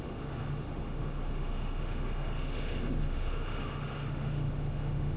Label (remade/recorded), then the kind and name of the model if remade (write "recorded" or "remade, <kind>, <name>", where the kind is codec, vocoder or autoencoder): remade, autoencoder, DAC-VAE